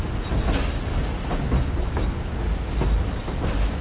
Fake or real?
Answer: real